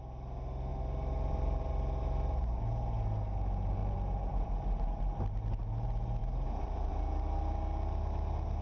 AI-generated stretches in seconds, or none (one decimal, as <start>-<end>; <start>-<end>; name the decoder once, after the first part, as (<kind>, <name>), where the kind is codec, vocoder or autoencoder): 0.7-2.6 (vocoder, BigVGAN v2); 3.8-5.0; 6.2-6.9